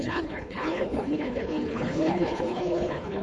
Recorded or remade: remade